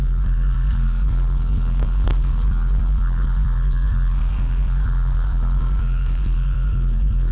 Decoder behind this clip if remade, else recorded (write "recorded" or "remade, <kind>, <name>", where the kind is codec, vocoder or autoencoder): remade, codec, SNAC